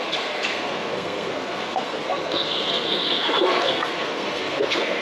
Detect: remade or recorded remade